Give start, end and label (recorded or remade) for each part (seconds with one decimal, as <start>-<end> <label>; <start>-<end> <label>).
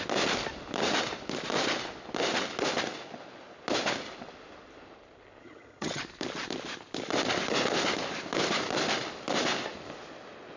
0.0-5.4 recorded; 5.4-6.0 remade; 6.0-10.6 recorded